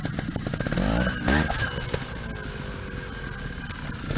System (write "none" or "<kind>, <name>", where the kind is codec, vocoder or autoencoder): none